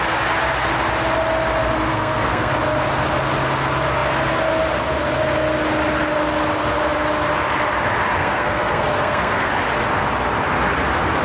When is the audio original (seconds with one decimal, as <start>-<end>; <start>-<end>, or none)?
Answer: 0.0-1.9; 2.5-8.2; 9.5-11.2